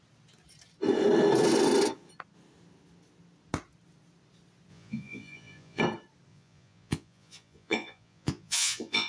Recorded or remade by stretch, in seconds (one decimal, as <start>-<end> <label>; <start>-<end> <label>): 0.0-4.7 recorded; 4.7-5.8 remade; 5.8-6.3 recorded; 6.3-9.1 remade